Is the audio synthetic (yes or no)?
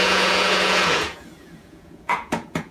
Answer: yes